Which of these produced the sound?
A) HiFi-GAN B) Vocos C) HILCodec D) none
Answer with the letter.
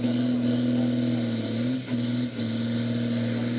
D